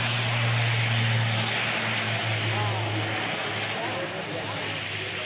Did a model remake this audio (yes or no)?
no